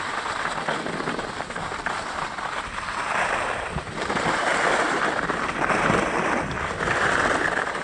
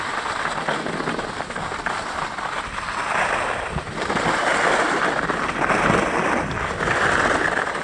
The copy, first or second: first